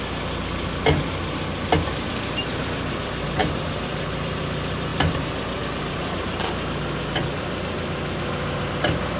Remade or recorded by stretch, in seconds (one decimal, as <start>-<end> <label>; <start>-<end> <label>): 0.0-9.2 recorded